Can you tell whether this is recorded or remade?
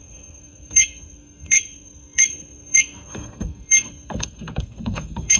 remade